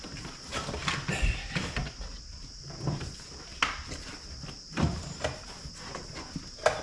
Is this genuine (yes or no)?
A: yes